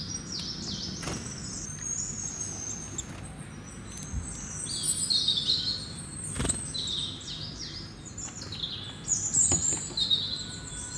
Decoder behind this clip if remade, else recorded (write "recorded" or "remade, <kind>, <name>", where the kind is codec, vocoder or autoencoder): recorded